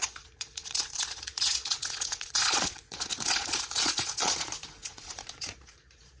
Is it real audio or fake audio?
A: fake